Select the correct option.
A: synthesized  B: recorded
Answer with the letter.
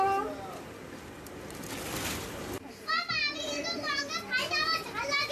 B